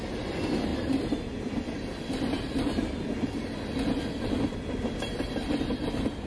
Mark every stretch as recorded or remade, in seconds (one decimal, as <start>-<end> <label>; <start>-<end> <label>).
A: 0.0-6.3 recorded